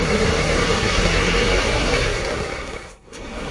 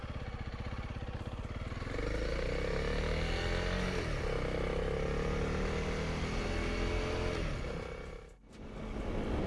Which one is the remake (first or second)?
first